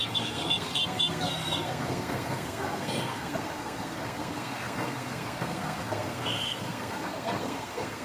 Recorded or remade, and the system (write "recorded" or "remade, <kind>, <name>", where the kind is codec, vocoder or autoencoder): remade, codec, SNAC